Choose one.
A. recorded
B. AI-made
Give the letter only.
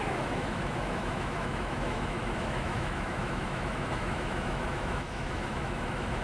B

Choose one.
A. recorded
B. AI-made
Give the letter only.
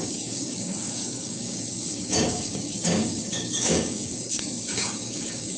B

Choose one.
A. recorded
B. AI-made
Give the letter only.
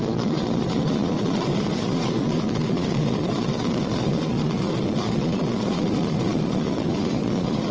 B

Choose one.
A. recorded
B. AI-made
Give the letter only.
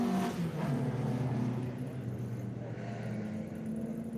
A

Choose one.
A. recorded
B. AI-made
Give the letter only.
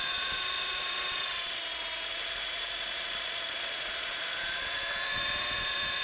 B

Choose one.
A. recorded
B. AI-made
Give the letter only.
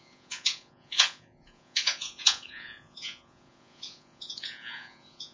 B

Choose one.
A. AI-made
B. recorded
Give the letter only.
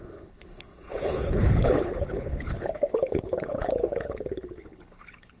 A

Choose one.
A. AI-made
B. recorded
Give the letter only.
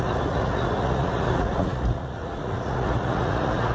A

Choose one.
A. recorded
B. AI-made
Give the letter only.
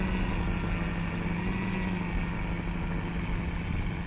A